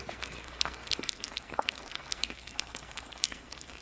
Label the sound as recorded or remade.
remade